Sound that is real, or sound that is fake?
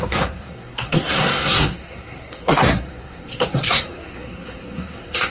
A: fake